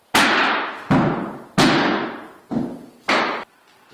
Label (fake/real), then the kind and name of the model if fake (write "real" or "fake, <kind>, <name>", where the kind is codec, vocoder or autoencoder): real